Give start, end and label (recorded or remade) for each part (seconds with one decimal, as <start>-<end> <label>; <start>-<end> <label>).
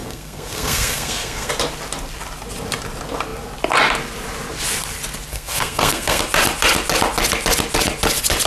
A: 0.0-1.5 remade; 1.5-5.3 recorded; 5.3-6.2 remade; 6.2-8.5 recorded